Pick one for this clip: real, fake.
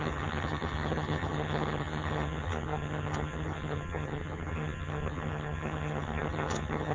fake